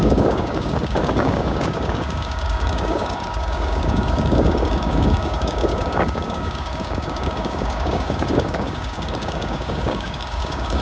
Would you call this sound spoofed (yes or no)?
yes